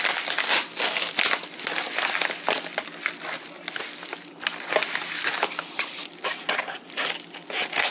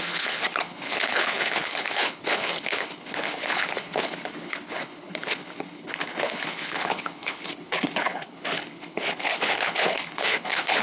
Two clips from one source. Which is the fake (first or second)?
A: second